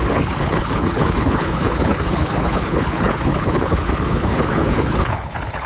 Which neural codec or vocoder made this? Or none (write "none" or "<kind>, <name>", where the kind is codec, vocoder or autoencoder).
codec, HILCodec